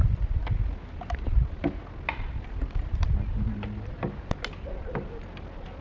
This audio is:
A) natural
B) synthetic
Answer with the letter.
A